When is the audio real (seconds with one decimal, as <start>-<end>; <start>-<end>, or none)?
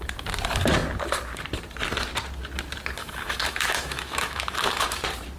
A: 0.0-3.0; 5.0-5.4